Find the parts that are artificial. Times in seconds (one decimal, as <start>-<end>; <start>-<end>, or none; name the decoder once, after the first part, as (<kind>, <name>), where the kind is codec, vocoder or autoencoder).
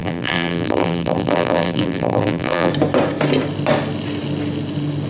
0.0-2.7 (vocoder, BigVGAN v2)